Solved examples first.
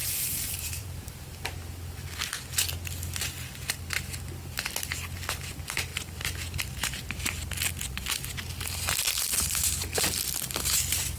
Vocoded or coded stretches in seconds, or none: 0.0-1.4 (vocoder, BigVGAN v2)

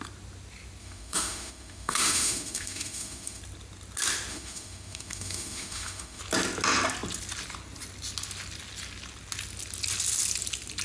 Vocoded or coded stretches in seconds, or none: 0.8-3.4 (autoencoder, DAC-VAE); 4.3-6.2

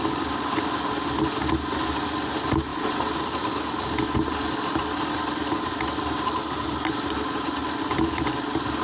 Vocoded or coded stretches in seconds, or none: none

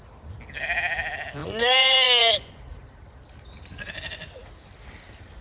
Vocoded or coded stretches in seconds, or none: 1.4-2.6 (vocoder, Vocos)

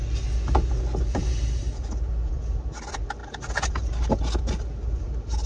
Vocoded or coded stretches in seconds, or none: none

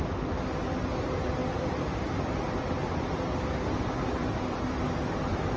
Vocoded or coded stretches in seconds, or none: none

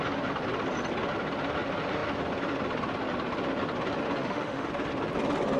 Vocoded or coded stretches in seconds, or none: 4.2-4.7 (autoencoder, DAC-VAE)

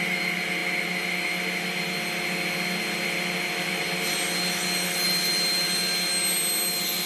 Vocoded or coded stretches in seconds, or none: none